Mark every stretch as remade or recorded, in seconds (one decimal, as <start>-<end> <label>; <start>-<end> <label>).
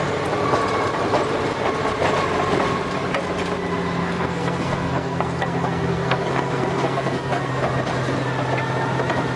0.0-4.0 recorded; 4.0-7.5 remade; 7.5-9.4 recorded